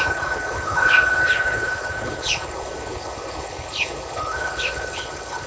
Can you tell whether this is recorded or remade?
remade